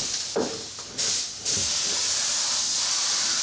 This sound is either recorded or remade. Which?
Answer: recorded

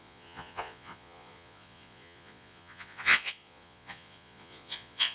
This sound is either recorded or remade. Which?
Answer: remade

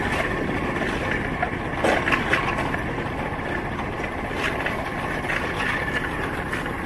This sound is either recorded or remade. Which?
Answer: recorded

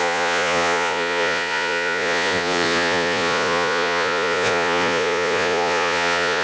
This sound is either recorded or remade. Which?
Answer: remade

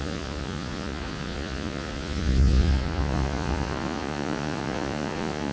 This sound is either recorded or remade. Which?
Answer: remade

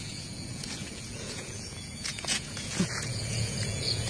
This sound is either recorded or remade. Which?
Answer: remade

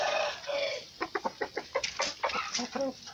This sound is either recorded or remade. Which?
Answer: recorded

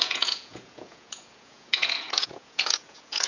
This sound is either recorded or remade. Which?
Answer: remade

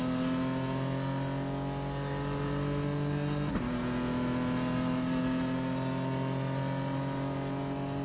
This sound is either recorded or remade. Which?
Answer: recorded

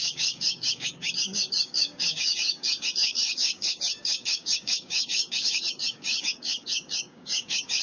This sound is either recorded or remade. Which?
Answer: remade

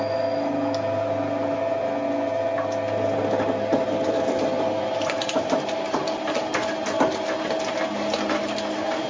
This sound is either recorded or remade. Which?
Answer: recorded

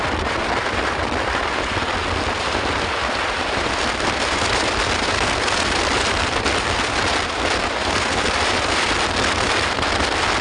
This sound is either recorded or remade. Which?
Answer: remade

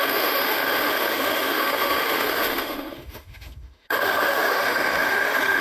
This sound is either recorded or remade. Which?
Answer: remade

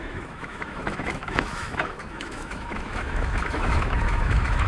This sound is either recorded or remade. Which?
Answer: remade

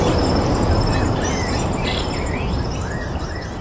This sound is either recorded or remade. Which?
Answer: recorded